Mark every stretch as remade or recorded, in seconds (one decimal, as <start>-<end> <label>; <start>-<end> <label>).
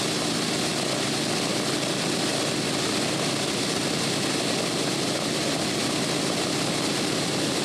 0.0-4.9 recorded; 4.9-5.6 remade; 5.6-7.6 recorded